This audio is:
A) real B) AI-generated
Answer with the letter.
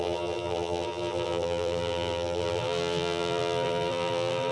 B